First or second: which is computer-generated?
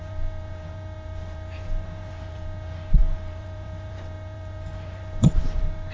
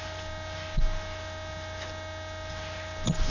first